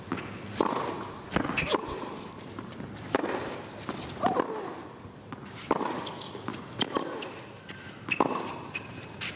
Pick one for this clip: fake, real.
real